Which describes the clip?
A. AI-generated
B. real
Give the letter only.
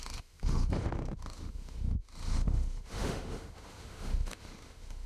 A